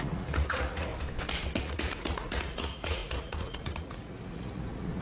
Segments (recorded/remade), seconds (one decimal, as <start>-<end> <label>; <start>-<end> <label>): 0.0-0.9 remade; 0.9-1.6 recorded; 1.6-5.0 remade